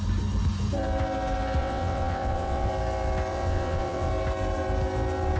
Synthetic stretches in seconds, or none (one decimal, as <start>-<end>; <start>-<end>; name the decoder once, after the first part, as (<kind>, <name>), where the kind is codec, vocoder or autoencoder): 1.6-2.7 (vocoder, WaveNeXt); 3.3-4.1